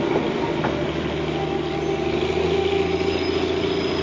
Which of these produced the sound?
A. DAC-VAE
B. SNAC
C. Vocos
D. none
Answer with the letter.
D